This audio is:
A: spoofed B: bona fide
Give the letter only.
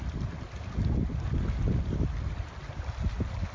B